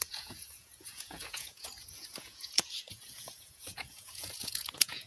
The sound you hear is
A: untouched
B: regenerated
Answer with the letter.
B